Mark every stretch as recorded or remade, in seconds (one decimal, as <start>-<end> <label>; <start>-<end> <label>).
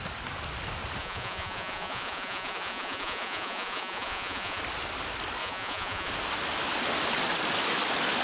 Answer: 0.0-1.0 recorded; 1.0-4.6 remade; 4.6-5.4 recorded; 5.4-6.1 remade; 6.1-8.2 recorded